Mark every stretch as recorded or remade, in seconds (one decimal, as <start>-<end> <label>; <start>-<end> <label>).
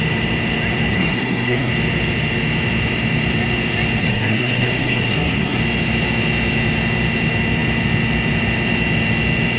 0.0-0.9 recorded; 0.9-1.7 remade; 1.7-4.0 recorded; 4.0-5.6 remade; 5.6-9.6 recorded